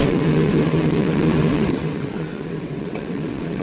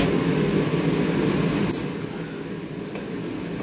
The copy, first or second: first